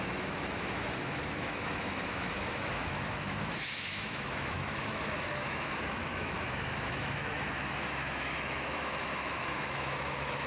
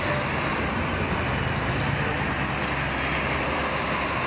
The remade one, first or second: first